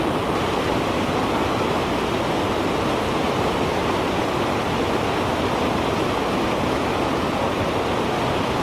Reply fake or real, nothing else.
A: real